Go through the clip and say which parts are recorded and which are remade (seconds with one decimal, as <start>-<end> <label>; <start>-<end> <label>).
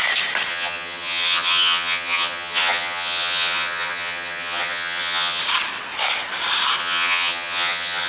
0.0-0.5 recorded; 0.5-5.4 remade; 5.4-6.8 recorded; 6.8-8.1 remade